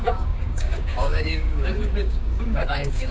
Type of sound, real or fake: fake